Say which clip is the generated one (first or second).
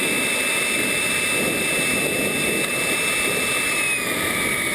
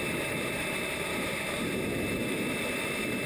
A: second